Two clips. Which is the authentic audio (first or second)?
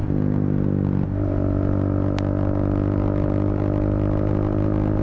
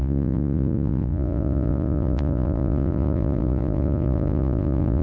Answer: first